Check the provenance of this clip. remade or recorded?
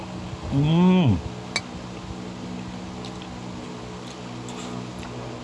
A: recorded